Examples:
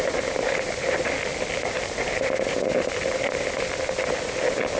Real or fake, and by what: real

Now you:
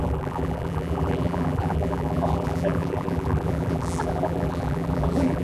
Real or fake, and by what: fake, vocoder, BigVGAN v2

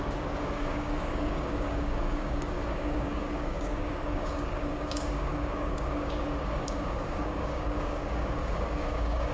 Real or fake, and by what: fake, codec, DAC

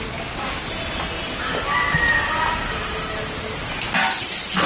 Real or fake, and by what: real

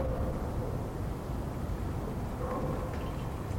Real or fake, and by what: real